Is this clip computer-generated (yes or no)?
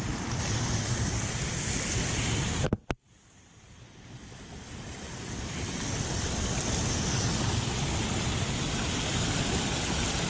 no